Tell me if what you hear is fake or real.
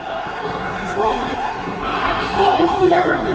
fake